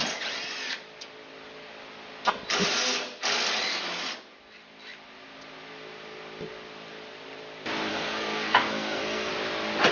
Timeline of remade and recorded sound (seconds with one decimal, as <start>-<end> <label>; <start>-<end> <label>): 0.0-7.9 recorded; 7.9-9.3 remade; 9.3-9.9 recorded